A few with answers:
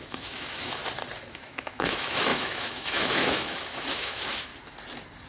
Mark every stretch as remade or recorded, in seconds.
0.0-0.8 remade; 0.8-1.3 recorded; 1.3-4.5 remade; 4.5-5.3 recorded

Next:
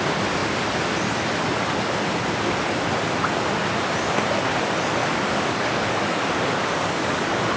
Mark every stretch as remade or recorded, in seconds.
0.0-5.0 recorded; 5.0-7.6 remade

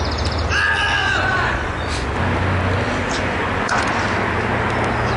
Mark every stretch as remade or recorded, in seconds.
0.0-1.0 recorded; 1.0-2.2 remade; 2.2-3.2 recorded; 3.2-3.9 remade; 3.9-5.2 recorded

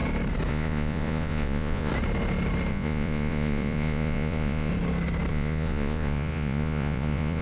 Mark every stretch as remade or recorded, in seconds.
0.0-0.5 recorded; 0.5-1.9 remade; 1.9-2.7 recorded; 2.7-4.7 remade; 4.7-5.3 recorded; 5.3-7.4 remade